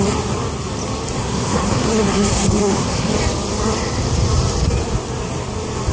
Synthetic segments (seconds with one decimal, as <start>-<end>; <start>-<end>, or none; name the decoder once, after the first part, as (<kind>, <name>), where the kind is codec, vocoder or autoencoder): 1.2-3.1 (codec, SNAC)

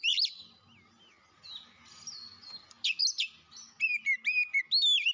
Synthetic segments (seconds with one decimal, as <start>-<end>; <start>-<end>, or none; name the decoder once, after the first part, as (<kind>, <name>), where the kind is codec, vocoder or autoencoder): none

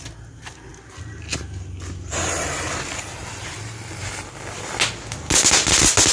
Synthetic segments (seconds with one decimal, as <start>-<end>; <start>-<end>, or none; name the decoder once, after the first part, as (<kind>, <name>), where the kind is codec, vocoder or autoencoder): none